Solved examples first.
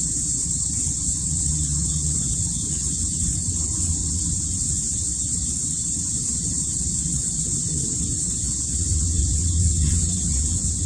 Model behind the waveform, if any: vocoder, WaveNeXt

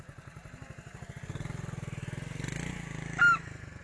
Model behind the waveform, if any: none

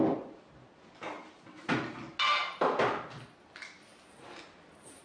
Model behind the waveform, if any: none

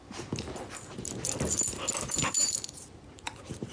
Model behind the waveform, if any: none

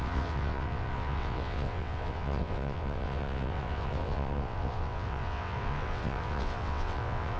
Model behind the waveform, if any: vocoder, WaveNeXt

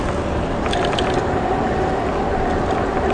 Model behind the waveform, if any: none